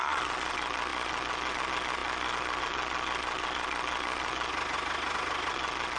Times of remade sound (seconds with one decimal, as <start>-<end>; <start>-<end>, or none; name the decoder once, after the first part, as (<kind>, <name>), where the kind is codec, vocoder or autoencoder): 0.0-4.5 (vocoder, Vocos); 5.5-6.0